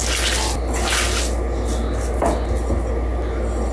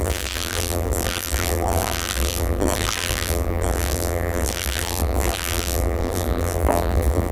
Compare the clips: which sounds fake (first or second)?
second